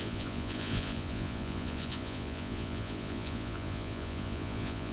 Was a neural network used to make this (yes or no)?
yes